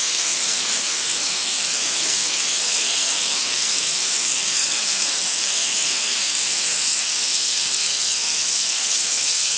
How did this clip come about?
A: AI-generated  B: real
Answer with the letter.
A